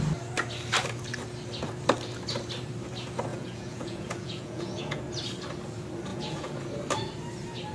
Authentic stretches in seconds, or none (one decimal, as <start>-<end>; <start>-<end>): 0.0-3.3; 5.0-6.1; 6.6-7.7